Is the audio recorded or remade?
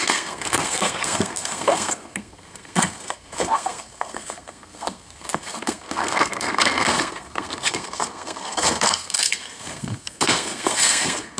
remade